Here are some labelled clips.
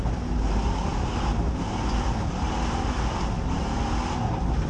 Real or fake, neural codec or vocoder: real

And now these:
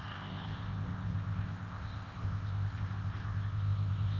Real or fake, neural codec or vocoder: fake, codec, ZipCodec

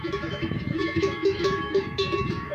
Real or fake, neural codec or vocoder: fake, autoencoder, DAC-VAE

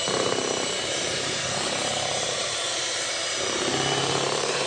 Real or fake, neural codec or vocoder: fake, vocoder, BigVGAN v2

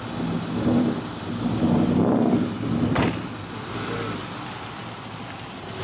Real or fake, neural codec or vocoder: real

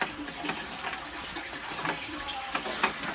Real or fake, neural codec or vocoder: fake, vocoder, BigVGAN v2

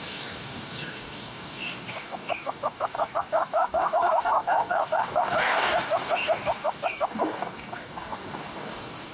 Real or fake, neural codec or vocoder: fake, codec, DAC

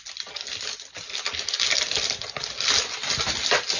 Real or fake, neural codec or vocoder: real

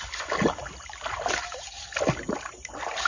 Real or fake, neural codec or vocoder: real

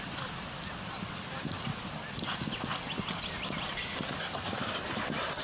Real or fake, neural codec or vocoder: real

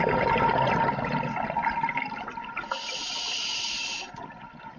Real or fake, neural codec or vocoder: real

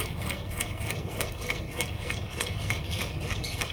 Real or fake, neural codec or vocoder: fake, codec, SNAC